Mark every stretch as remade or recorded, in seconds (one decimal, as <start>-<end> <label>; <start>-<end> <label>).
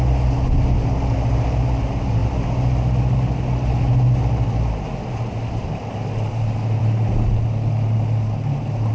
0.0-8.9 recorded